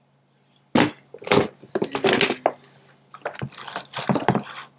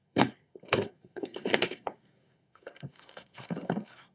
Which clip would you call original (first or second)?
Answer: first